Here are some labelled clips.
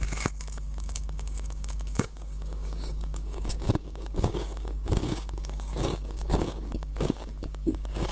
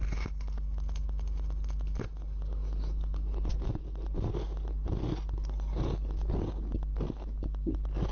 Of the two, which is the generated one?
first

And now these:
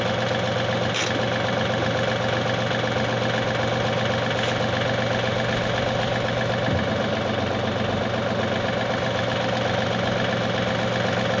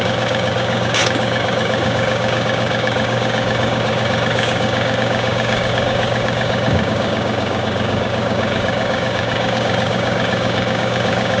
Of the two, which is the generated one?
second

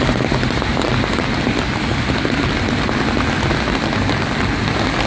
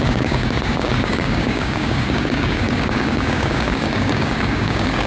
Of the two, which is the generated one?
second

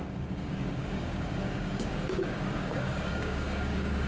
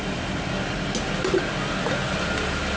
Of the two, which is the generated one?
first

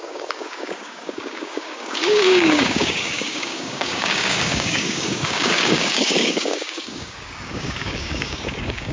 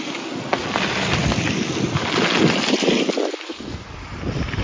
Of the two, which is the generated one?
first